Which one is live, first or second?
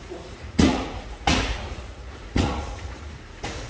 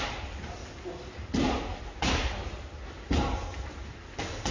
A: second